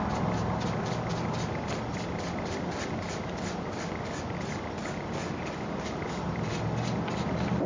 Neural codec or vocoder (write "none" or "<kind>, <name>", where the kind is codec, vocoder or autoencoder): none